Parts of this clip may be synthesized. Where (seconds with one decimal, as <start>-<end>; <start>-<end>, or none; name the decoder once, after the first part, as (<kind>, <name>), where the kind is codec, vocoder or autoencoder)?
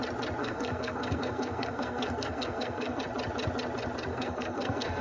0.4-3.0 (codec, SNAC); 4.1-5.0